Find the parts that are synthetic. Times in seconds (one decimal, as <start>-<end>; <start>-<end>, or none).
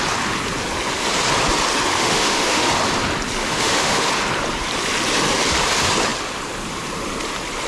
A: 2.0-2.7; 3.4-4.1